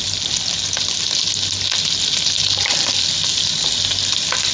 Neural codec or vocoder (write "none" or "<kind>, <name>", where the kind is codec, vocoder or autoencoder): none